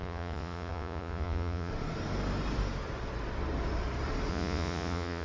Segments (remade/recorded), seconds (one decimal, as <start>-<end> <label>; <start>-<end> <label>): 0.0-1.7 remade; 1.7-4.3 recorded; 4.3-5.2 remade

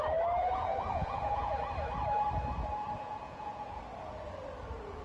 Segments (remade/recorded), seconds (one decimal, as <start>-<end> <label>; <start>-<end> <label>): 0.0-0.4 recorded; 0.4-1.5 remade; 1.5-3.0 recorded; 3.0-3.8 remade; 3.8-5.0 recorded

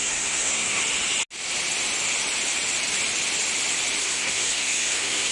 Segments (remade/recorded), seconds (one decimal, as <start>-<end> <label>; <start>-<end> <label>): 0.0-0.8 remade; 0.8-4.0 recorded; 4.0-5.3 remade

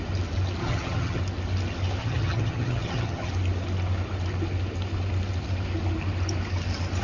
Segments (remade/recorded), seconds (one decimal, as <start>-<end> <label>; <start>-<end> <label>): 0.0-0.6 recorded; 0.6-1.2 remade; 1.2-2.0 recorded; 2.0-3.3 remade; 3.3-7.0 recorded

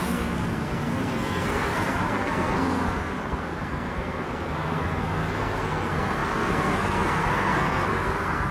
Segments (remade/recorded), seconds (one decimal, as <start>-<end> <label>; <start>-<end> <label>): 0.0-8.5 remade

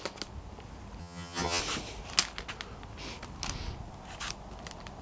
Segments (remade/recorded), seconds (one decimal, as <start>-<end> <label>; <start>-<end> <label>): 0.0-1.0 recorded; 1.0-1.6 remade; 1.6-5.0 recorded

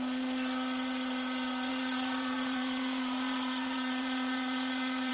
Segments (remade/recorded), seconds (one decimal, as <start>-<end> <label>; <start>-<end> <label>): 0.0-1.7 recorded; 1.7-5.1 remade

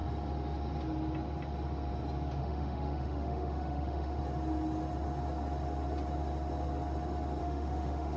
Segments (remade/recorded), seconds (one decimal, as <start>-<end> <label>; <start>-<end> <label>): 0.0-2.4 recorded; 2.4-4.2 remade; 4.2-7.4 recorded; 7.4-8.2 remade